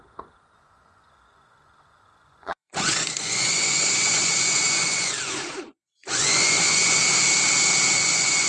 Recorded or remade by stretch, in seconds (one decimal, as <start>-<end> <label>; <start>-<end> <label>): 0.0-7.0 remade; 7.0-8.0 recorded; 8.0-8.5 remade